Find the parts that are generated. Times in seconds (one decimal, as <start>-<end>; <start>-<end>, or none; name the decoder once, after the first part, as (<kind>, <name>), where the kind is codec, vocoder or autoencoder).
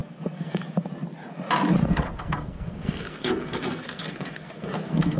0.0-0.6 (codec, SNAC); 1.8-5.2